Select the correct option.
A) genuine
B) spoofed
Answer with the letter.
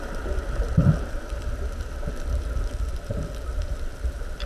B